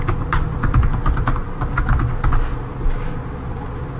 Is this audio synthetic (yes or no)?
no